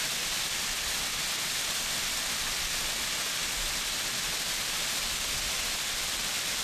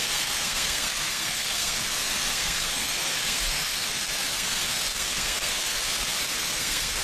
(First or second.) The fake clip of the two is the second